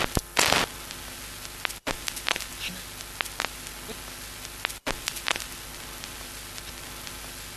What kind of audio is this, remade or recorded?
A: recorded